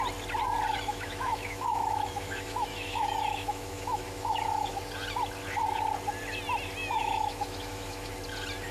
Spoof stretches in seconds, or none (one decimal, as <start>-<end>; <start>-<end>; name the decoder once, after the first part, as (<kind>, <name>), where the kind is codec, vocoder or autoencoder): 0.7-4.8 (autoencoder, DAC-VAE); 6.8-8.1